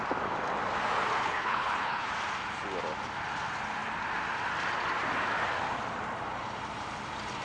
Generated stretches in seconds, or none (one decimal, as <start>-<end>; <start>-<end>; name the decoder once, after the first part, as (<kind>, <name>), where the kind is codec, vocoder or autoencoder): 1.2-2.1 (codec, HILCodec)